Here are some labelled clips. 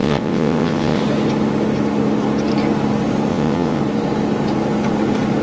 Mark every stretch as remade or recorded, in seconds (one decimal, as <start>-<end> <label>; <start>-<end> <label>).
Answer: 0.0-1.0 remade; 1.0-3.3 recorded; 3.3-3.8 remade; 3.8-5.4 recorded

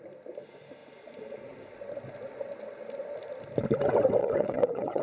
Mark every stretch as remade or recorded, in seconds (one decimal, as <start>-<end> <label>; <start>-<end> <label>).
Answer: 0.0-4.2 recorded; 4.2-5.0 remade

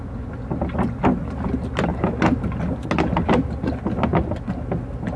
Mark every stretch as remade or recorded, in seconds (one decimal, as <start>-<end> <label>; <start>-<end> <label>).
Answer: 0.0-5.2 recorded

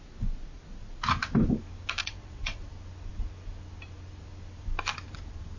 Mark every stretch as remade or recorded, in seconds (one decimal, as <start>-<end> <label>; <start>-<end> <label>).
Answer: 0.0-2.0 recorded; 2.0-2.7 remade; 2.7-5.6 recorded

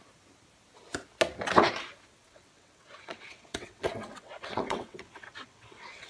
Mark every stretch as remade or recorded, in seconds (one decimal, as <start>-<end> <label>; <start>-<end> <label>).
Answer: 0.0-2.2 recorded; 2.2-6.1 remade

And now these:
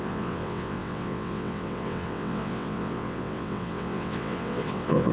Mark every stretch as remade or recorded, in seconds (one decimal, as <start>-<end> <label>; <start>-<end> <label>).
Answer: 0.0-5.1 remade